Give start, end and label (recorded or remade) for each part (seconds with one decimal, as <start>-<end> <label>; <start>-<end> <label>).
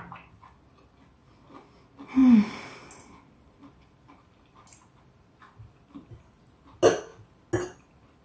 0.0-8.2 recorded